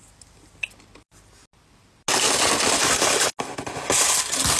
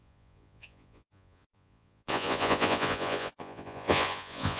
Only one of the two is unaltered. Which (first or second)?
first